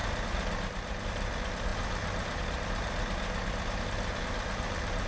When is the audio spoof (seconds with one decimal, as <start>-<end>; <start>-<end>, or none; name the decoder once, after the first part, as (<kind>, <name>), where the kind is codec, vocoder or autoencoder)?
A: none